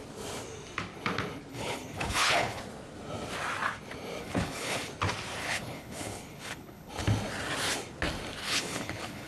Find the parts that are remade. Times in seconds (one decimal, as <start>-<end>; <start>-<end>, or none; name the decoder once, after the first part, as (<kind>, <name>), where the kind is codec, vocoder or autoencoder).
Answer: 1.5-2.6 (codec, HILCodec); 4.2-4.9; 5.4-6.9; 8.4-9.3